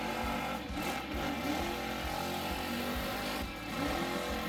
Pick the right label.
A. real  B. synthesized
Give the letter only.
A